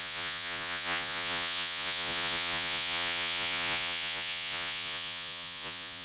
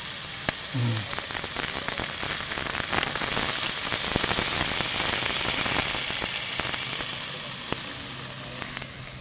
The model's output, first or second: first